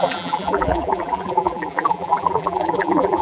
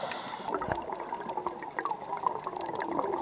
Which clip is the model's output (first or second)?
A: first